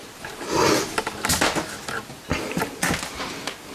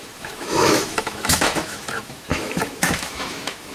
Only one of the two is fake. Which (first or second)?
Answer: second